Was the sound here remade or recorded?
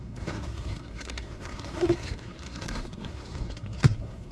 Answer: remade